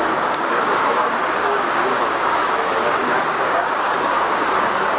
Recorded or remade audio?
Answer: remade